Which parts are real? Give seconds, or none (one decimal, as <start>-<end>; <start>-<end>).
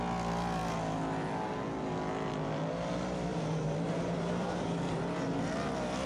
0.0-3.3; 5.5-6.1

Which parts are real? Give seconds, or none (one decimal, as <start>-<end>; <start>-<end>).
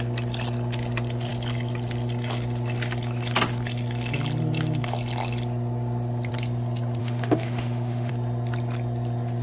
0.0-7.0; 8.1-9.4